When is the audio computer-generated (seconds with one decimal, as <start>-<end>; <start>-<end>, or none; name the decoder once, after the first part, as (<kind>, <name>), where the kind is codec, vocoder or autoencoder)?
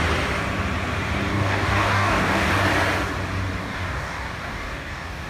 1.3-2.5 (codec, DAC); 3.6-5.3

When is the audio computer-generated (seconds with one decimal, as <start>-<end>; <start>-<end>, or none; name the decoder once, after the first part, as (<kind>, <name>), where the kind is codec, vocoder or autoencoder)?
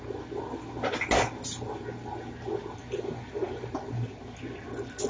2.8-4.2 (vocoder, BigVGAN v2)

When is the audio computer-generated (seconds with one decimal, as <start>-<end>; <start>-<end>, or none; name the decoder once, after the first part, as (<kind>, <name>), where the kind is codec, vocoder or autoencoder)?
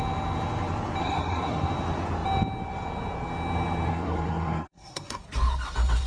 1.0-1.7 (codec, SNAC); 3.9-5.2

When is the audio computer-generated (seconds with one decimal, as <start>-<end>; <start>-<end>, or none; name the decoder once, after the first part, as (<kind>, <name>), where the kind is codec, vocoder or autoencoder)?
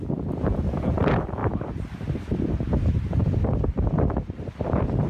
1.4-4.5 (vocoder, BigVGAN v2)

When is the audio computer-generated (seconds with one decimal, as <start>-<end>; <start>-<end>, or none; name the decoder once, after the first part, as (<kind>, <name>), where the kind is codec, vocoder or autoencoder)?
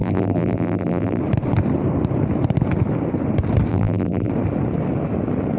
0.0-1.2 (vocoder, BigVGAN v2); 3.7-4.3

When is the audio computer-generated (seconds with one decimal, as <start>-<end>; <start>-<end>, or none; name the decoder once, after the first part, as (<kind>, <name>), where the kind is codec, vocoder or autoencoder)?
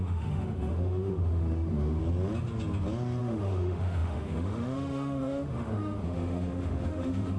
0.0-2.0 (autoencoder, DAC-VAE); 3.2-7.4